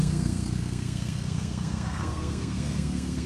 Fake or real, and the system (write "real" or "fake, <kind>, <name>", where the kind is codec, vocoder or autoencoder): fake, codec, SNAC